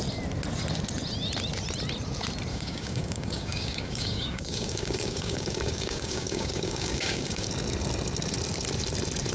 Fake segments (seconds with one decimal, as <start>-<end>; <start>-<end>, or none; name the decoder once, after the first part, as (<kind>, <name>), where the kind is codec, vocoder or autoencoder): 2.5-7.5 (codec, DAC)